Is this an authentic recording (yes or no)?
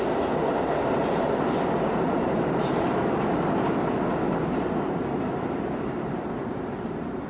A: yes